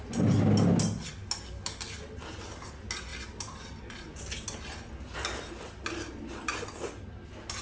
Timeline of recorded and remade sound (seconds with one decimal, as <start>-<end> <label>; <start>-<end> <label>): 0.0-7.6 recorded